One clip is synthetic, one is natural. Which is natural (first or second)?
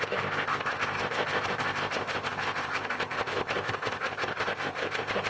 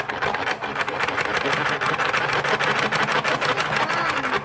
second